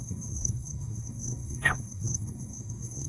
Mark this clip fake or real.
fake